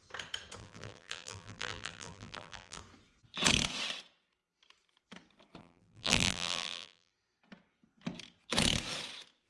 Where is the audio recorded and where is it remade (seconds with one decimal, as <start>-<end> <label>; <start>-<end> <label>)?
0.0-0.6 recorded; 0.6-2.8 remade; 2.8-5.6 recorded; 5.6-7.1 remade; 7.1-9.5 recorded